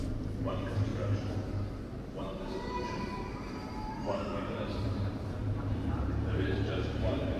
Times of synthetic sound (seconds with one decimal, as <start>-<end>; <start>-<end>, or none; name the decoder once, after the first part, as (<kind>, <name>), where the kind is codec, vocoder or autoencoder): 0.0-0.9 (vocoder, BigVGAN v2); 2.2-7.4